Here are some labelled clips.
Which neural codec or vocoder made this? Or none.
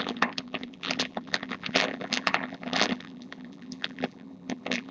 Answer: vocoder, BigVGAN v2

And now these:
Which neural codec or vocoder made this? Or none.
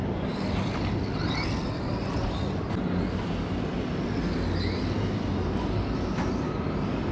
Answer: none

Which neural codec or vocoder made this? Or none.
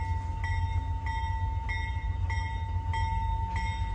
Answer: none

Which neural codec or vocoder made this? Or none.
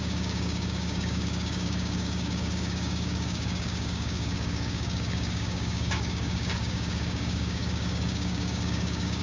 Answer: codec, DAC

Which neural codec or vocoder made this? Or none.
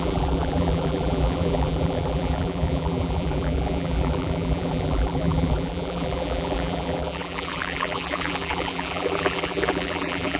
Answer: vocoder, BigVGAN v2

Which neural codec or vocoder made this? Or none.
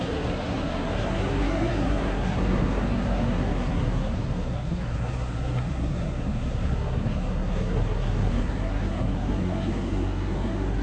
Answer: codec, SNAC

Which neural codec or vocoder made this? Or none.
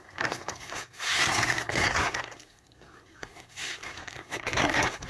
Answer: codec, SNAC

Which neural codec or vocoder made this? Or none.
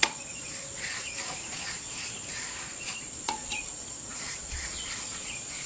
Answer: vocoder, Vocos